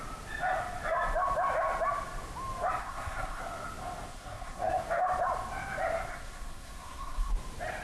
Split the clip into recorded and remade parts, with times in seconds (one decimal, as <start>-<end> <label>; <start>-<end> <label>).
0.0-2.8 recorded; 2.8-3.4 remade; 3.4-4.1 recorded; 4.1-4.8 remade; 4.8-6.1 recorded; 6.1-7.3 remade; 7.3-7.8 recorded